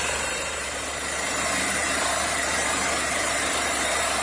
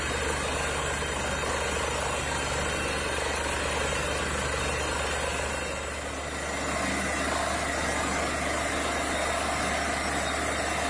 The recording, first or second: second